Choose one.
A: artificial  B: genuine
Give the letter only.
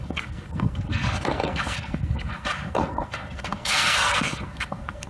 A